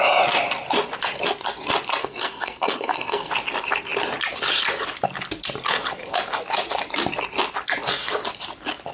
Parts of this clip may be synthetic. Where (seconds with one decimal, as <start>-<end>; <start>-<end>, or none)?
2.0-3.3